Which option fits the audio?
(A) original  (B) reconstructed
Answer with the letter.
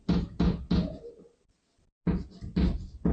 A